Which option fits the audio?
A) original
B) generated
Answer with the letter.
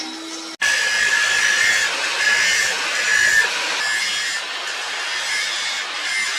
A